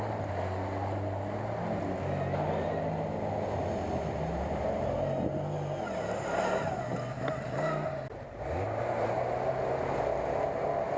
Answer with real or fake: real